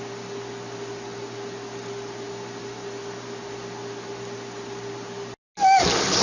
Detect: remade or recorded recorded